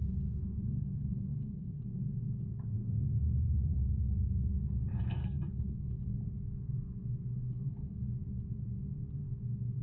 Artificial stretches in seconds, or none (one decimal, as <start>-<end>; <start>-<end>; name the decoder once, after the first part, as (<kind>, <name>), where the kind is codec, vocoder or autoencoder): 0.6-1.8 (codec, SNAC); 5.2-6.0; 7.5-8.1